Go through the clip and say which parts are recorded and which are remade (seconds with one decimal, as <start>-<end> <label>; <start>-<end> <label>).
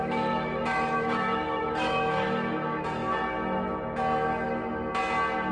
0.0-3.0 remade; 3.0-5.5 recorded